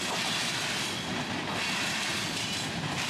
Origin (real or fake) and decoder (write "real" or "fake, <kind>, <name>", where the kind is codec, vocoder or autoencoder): real